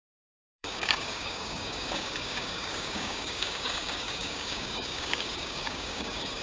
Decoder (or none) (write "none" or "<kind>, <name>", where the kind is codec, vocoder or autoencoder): codec, DAC